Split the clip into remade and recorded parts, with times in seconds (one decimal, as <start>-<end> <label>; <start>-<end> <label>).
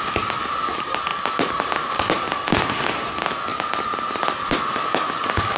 0.0-3.5 recorded; 3.5-4.0 remade; 4.0-5.6 recorded